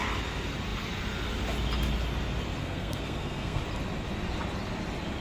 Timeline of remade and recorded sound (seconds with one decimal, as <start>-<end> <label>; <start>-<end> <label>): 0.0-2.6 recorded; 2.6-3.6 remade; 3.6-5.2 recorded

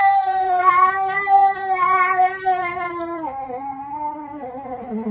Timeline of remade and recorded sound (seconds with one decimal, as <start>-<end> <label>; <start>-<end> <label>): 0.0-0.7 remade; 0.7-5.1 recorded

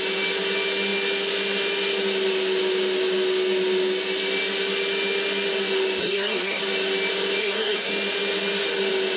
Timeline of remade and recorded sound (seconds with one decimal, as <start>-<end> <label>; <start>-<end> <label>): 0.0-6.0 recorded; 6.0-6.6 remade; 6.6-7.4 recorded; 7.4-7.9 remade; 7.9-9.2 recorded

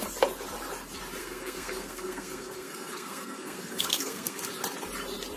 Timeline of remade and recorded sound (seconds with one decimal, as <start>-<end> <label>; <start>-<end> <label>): 0.0-1.2 recorded; 1.2-4.4 remade; 4.4-5.4 recorded